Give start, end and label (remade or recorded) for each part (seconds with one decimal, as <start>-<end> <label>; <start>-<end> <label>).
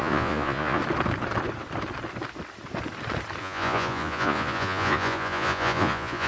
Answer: 0.0-0.8 remade; 0.8-3.4 recorded; 3.4-6.3 remade